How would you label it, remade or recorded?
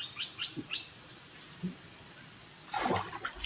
recorded